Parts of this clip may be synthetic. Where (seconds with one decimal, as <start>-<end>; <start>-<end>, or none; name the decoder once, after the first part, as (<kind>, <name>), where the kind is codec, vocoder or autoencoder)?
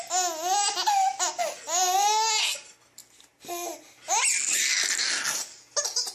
none